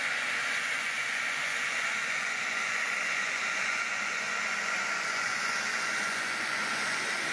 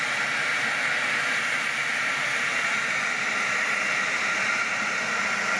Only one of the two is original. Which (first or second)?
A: second